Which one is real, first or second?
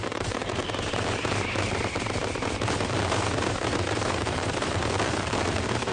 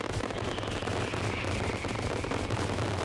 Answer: second